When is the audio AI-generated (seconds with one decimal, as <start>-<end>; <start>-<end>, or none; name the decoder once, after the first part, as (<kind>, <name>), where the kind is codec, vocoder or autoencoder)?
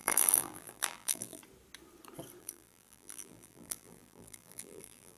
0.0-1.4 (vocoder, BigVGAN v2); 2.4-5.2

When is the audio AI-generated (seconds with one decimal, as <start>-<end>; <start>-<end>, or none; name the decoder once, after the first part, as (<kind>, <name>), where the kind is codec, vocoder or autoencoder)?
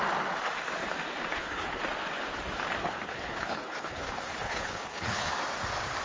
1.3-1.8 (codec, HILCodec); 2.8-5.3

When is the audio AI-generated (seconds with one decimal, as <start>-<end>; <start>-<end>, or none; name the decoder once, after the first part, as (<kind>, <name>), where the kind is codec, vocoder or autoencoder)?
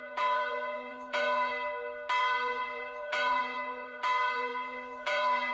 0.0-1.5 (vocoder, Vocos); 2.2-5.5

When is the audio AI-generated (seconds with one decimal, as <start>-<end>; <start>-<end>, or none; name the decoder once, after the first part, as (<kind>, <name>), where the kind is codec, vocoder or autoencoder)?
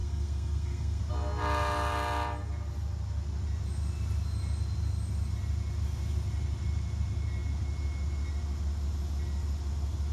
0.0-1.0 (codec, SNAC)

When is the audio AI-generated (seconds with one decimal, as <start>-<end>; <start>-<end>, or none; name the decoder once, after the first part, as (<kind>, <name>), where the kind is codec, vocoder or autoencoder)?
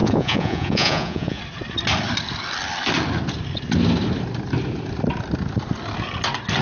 0.0-1.4 (vocoder, Vocos)